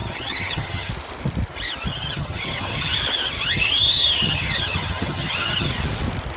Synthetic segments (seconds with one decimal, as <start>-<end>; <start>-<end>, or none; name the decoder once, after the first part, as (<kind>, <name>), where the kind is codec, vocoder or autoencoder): 0.0-0.9 (vocoder, HiFi-GAN); 1.9-2.9; 3.4-5.7